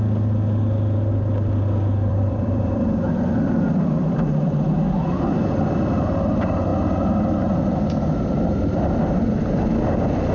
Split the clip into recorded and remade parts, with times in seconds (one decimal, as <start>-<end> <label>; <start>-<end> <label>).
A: 0.0-2.1 recorded; 2.1-5.6 remade; 5.6-10.3 recorded